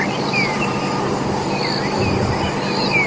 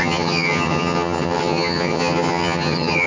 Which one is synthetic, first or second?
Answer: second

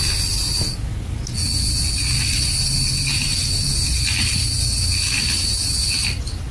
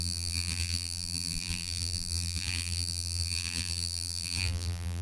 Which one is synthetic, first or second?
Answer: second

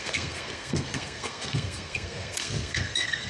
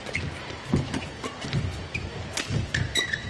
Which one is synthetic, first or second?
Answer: first